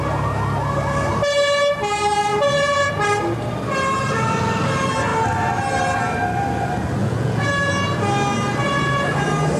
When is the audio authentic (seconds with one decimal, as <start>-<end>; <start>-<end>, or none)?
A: 0.0-2.3; 2.9-7.0; 7.7-9.6